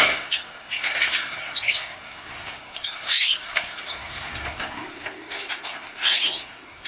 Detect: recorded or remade remade